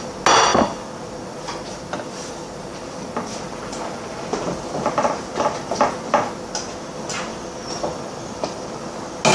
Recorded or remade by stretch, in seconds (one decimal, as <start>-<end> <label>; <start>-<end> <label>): 0.0-0.5 recorded; 0.5-4.2 remade; 4.2-7.3 recorded; 7.3-8.7 remade; 8.7-9.3 recorded

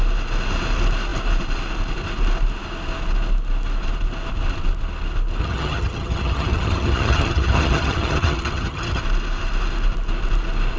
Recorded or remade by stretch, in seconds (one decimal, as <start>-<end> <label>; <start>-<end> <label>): 0.0-5.4 recorded; 5.4-9.0 remade; 9.0-10.8 recorded

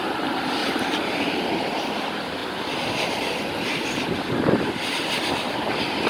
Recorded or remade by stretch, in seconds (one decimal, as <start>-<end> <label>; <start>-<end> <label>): 0.0-0.6 recorded; 0.6-1.5 remade; 1.5-6.1 recorded

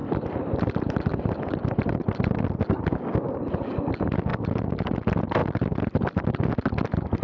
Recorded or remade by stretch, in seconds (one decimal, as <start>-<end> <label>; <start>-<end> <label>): 0.0-3.9 remade; 3.9-4.3 recorded; 4.3-4.8 remade; 4.8-5.4 recorded; 5.4-6.5 remade; 6.5-7.2 recorded

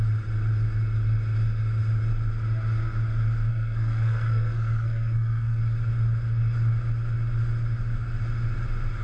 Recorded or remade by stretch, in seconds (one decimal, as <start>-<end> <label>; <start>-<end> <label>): 0.0-3.5 recorded; 3.5-5.6 remade; 5.6-9.0 recorded

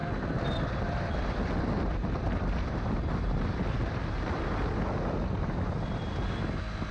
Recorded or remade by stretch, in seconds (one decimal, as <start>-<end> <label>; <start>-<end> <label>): 0.0-3.7 remade; 3.7-6.9 recorded

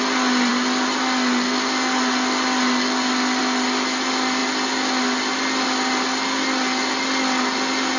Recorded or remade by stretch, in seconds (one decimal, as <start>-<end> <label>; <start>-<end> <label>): 0.0-8.0 recorded